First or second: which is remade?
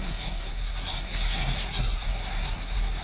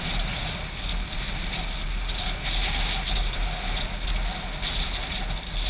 first